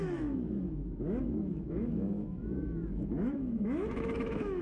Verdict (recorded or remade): remade